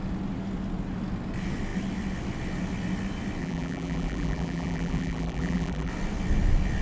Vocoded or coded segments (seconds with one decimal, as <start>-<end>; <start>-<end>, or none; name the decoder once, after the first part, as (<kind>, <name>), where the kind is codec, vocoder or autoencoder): 3.4-5.9 (vocoder, BigVGAN v2)